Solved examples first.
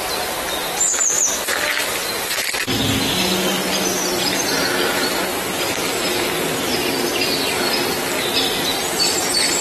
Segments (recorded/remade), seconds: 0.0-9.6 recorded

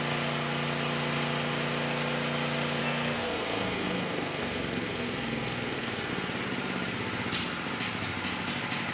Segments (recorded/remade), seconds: 0.0-2.8 recorded; 2.8-6.1 remade; 6.1-8.9 recorded

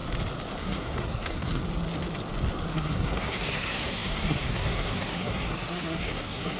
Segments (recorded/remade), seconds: 0.0-0.6 recorded; 0.6-1.6 remade; 1.6-2.7 recorded; 2.7-6.6 remade

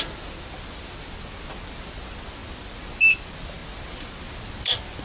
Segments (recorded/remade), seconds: 0.0-5.0 recorded

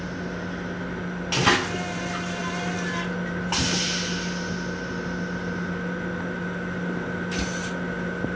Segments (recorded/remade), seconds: 0.0-8.4 recorded